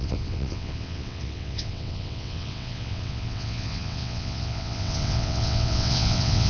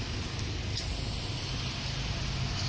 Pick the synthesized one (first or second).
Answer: first